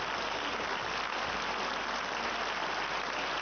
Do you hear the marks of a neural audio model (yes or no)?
no